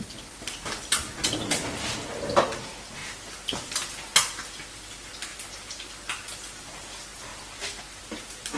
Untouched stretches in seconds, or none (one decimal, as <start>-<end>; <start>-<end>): 0.0-8.6